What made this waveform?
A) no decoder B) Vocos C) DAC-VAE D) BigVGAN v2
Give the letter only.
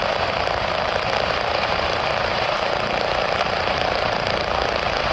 D